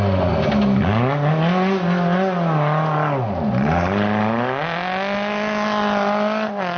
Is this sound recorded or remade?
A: recorded